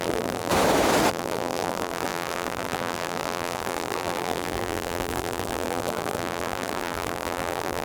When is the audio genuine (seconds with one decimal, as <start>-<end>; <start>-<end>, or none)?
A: 0.5-1.1